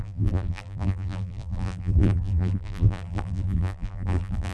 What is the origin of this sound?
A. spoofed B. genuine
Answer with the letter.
A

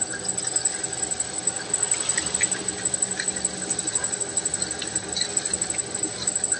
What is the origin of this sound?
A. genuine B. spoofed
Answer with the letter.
A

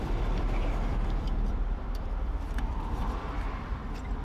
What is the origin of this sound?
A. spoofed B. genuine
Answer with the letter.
A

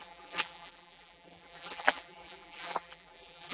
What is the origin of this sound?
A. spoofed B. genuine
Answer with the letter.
A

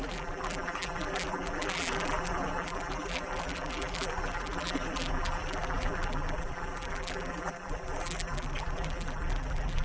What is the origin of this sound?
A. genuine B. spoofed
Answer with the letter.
B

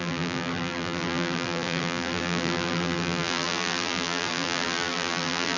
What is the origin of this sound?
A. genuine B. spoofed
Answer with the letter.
B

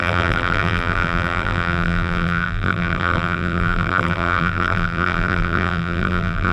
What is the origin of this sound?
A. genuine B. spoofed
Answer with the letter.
B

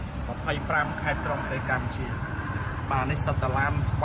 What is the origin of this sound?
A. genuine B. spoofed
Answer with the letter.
B